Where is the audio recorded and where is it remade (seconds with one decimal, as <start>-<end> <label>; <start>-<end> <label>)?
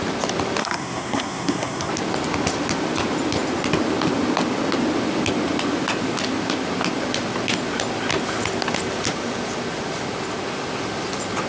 0.0-0.6 recorded; 0.6-1.9 remade; 1.9-11.5 recorded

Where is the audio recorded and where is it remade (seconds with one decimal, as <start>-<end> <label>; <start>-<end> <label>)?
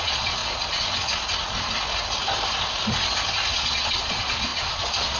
0.0-0.4 remade; 0.4-3.5 recorded; 3.5-5.2 remade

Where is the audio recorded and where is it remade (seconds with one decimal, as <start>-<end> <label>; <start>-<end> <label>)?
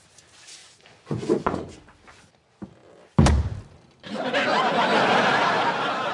0.0-0.6 recorded; 0.6-1.8 remade; 1.8-6.1 recorded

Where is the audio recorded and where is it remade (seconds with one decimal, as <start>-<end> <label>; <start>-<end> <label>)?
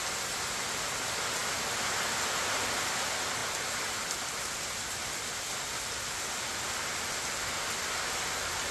0.0-8.7 recorded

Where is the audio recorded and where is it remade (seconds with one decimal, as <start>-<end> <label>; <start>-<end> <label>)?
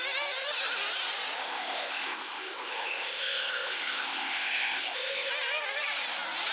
0.0-1.4 recorded; 1.4-5.3 remade; 5.3-6.5 recorded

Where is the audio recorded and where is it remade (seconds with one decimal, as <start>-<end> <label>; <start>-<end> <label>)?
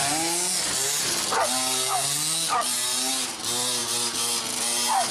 0.0-5.1 recorded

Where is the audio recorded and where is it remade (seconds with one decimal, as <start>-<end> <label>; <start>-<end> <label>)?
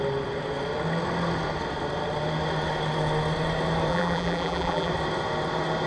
0.0-3.9 recorded; 3.9-4.9 remade; 4.9-5.9 recorded